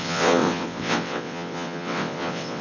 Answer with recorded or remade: remade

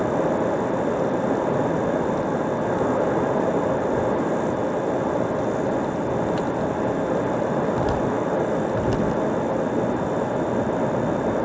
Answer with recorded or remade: recorded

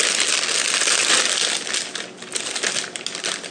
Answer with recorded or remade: recorded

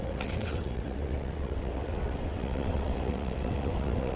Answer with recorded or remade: remade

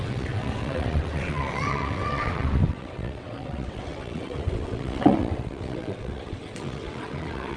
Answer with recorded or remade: remade